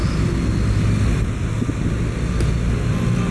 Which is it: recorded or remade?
recorded